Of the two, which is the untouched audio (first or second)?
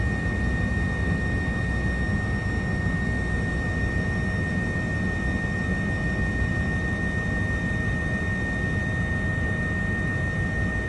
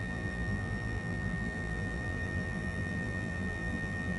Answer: first